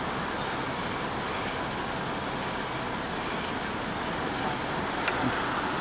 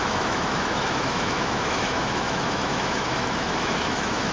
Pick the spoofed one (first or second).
second